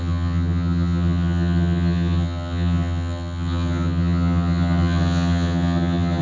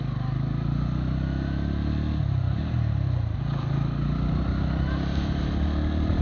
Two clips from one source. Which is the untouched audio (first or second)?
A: second